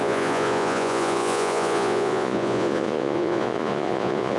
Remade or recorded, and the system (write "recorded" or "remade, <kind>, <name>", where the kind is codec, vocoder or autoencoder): remade, vocoder, Vocos